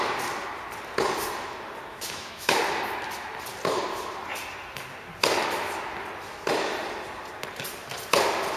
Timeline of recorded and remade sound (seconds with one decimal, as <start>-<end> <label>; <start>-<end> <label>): 0.0-1.9 recorded; 1.9-2.6 remade; 2.6-8.6 recorded